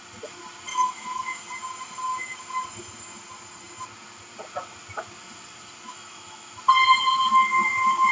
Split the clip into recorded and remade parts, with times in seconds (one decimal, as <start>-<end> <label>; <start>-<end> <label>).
0.0-0.7 recorded; 0.7-1.4 remade; 1.4-5.9 recorded; 5.9-6.6 remade; 6.6-8.1 recorded